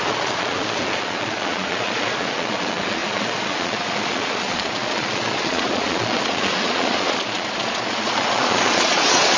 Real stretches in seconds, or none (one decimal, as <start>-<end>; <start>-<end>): none